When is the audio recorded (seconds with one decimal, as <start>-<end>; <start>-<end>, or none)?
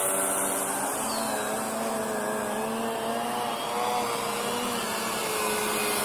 0.0-6.0